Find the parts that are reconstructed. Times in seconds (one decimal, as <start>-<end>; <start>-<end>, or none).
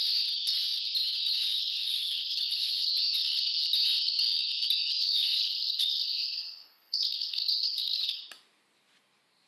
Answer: 1.4-2.9; 5.0-8.2